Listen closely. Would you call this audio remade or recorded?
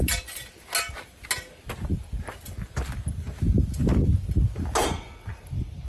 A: recorded